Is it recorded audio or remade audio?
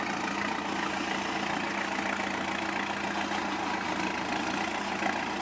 recorded